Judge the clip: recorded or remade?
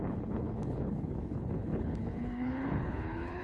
remade